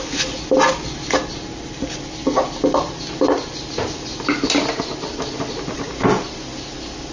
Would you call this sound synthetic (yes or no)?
no